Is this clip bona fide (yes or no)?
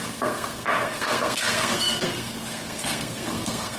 no